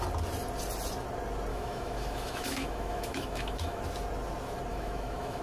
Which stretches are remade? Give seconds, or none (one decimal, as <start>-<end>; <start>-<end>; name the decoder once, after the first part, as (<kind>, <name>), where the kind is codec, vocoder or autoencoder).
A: 1.5-3.8 (autoencoder, DAC-VAE); 4.7-5.4